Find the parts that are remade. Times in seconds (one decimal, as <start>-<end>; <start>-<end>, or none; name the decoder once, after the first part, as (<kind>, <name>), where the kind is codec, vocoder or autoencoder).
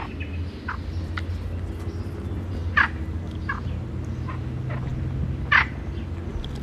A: none